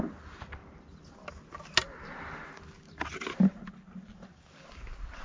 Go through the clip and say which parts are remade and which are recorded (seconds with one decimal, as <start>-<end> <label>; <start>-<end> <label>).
0.0-5.2 recorded